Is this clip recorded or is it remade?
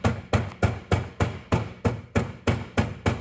recorded